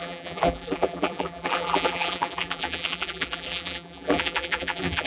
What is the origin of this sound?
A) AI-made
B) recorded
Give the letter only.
A